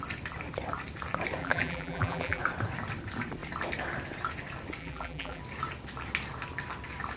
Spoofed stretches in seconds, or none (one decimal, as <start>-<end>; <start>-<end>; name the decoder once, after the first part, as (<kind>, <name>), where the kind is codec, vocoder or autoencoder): 1.4-2.4 (vocoder, BigVGAN v2); 4.8-5.4